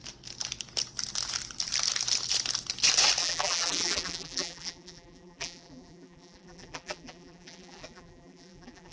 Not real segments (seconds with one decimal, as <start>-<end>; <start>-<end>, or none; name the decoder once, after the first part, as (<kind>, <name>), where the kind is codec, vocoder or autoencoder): 3.2-8.9 (vocoder, BigVGAN v2)